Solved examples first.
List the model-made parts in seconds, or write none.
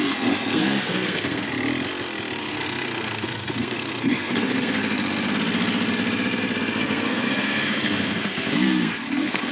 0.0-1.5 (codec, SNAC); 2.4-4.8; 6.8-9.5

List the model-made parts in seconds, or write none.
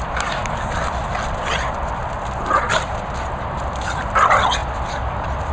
none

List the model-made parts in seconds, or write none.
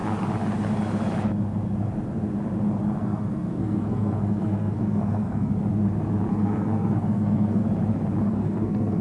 3.0-5.5 (codec, SNAC); 6.3-7.6; 8.2-9.0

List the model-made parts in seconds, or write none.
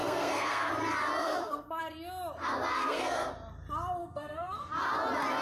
0.0-0.7 (codec, SNAC); 1.2-1.8; 2.7-3.3; 4.0-4.7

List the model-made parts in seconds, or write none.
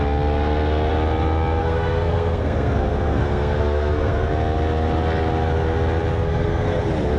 1.6-4.3 (codec, SNAC); 6.1-6.8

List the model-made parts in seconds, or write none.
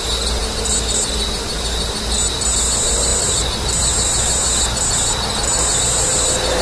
none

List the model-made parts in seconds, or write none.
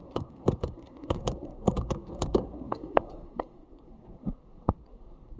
0.0-5.4 (codec, SNAC)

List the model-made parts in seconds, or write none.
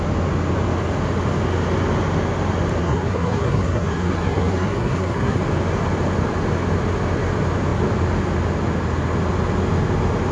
2.8-5.4 (codec, SNAC)